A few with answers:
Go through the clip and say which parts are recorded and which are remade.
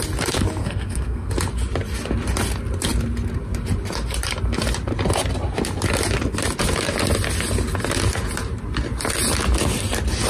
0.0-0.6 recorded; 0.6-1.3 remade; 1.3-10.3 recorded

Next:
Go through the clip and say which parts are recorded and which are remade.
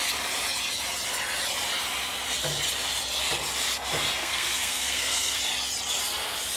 0.0-4.2 recorded; 4.2-5.4 remade; 5.4-6.6 recorded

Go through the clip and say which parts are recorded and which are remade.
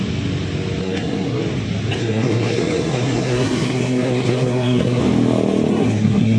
0.0-0.8 recorded; 0.8-1.4 remade; 1.4-2.0 recorded; 2.0-5.0 remade; 5.0-5.7 recorded; 5.7-6.4 remade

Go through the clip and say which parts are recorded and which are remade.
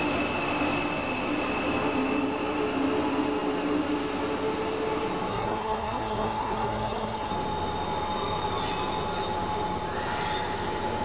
0.0-5.3 recorded; 5.3-7.3 remade; 7.3-11.0 recorded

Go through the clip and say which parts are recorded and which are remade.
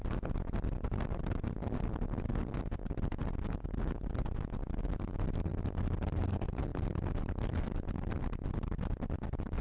0.0-9.6 recorded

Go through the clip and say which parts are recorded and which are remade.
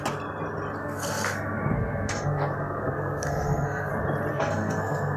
0.0-0.8 recorded; 0.8-3.9 remade; 3.9-4.3 recorded; 4.3-5.2 remade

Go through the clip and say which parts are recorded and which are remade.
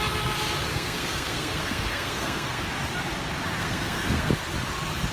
0.0-0.7 recorded; 0.7-2.6 remade; 2.6-3.6 recorded; 3.6-4.3 remade; 4.3-5.1 recorded